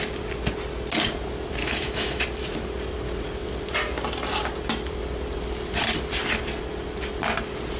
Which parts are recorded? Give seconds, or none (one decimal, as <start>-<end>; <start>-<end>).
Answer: 0.0-1.6; 2.2-7.8